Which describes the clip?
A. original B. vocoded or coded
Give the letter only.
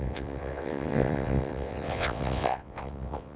B